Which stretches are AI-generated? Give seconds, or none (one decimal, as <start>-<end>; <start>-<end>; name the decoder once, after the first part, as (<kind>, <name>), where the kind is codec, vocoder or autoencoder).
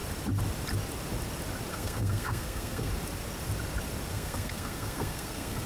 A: 1.7-2.9 (codec, SNAC); 4.1-5.7